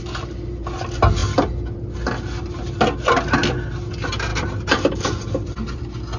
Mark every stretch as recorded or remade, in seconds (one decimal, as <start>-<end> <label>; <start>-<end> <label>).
0.0-4.3 recorded; 4.3-5.8 remade; 5.8-6.2 recorded